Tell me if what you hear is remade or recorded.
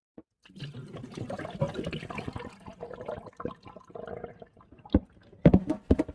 recorded